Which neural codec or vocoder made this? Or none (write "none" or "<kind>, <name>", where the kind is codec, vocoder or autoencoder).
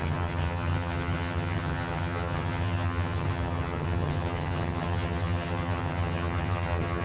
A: vocoder, HiFi-GAN